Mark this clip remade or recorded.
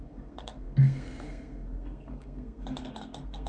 remade